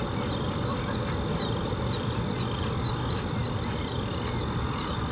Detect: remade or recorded recorded